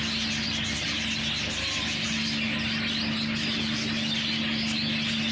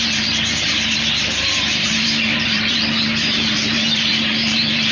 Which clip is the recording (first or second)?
first